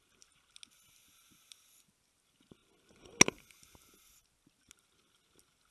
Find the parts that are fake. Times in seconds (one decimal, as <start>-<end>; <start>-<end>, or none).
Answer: none